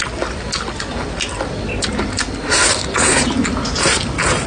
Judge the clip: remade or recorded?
recorded